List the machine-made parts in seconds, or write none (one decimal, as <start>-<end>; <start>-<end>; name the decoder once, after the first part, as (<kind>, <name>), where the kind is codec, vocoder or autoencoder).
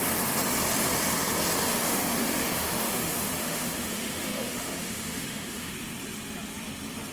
1.7-5.7 (autoencoder, DAC-VAE)